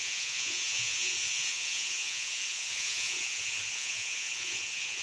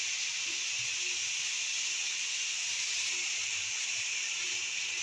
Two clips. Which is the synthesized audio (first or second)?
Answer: first